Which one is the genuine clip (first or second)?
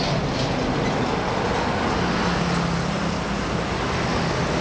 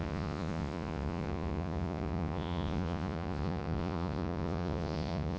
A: first